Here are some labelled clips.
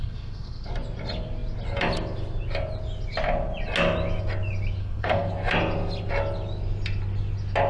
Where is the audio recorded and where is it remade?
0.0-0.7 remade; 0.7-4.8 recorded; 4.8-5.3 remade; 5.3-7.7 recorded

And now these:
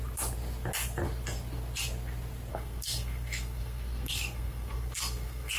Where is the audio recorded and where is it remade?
0.0-2.5 recorded; 2.5-5.6 remade

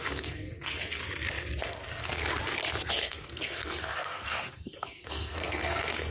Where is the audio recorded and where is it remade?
0.0-1.0 remade; 1.0-1.6 recorded; 1.6-2.2 remade; 2.2-2.9 recorded; 2.9-6.1 remade

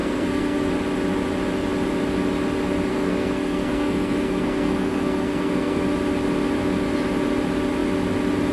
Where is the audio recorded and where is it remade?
0.0-0.7 remade; 0.7-2.9 recorded; 2.9-5.8 remade; 5.8-8.5 recorded

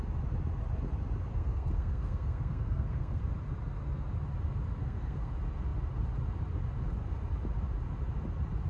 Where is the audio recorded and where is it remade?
0.0-1.3 recorded; 1.3-3.2 remade; 3.2-4.8 recorded; 4.8-5.3 remade; 5.3-8.7 recorded

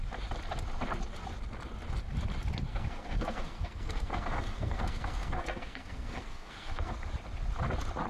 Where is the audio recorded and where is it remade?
0.0-2.7 recorded; 2.7-6.9 remade; 6.9-8.1 recorded